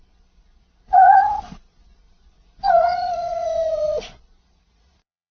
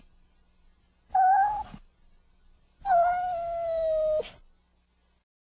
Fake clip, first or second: first